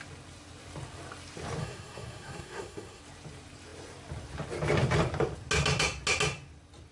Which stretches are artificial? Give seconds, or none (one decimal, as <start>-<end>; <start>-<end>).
1.6-3.0